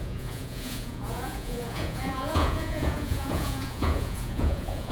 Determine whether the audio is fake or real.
fake